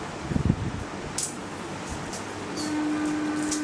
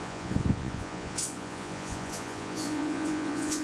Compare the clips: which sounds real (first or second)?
first